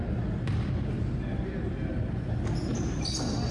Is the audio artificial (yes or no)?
no